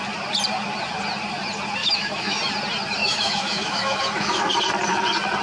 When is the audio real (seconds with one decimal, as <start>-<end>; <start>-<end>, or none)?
0.0-1.8; 2.4-3.0; 4.5-5.4